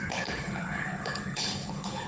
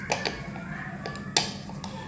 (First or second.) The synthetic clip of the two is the first